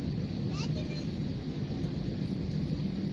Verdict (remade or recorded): recorded